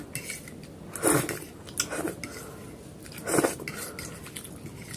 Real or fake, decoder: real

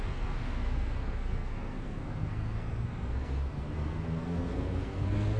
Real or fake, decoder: fake, codec, SNAC